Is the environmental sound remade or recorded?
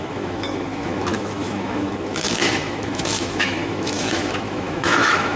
remade